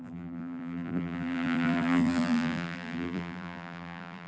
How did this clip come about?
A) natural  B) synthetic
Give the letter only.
B